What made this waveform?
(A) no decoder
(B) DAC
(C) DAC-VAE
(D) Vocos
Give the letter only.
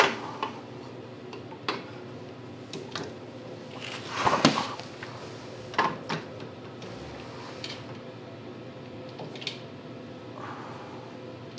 A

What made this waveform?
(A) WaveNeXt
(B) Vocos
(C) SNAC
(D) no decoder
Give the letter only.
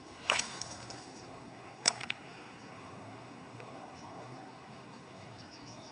C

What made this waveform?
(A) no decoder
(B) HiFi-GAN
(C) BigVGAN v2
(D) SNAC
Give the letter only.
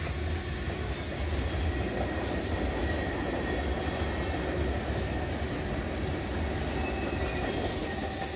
A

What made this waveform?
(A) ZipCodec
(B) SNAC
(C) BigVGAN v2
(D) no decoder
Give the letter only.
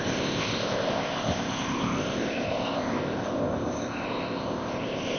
A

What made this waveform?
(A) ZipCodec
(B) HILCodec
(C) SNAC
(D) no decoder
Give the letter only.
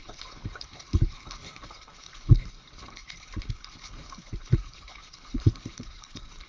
B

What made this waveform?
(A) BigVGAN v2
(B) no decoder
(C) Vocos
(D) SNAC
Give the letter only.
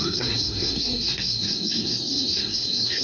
D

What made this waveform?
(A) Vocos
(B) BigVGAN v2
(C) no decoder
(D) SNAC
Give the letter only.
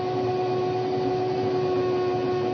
C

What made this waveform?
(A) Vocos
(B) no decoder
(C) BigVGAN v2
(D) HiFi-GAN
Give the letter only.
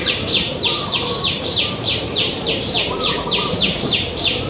C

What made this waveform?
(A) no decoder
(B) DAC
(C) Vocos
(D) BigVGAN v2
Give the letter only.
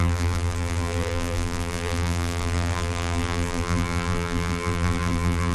D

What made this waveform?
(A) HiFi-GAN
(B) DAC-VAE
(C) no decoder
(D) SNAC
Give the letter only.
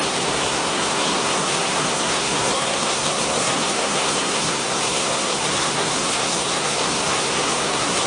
D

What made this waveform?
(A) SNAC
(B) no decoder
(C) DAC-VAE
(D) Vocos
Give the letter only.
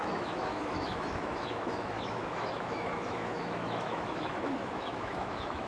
C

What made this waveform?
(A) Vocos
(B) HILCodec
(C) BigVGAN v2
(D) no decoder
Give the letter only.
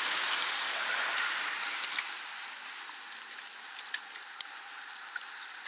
D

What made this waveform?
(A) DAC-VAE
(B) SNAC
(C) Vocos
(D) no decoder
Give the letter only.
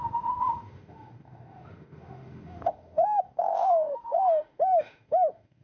A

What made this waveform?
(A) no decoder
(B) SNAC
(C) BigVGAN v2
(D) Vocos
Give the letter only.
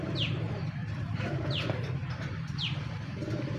C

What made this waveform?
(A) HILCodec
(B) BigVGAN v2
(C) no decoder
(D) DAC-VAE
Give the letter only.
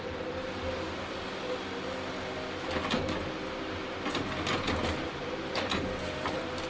C